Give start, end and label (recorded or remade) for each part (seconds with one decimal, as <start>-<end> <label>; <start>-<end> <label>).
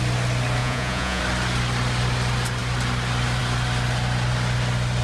0.0-0.6 recorded; 0.6-1.2 remade; 1.2-5.0 recorded